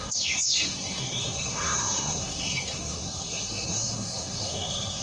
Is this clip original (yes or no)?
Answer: no